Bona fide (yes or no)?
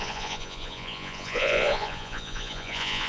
no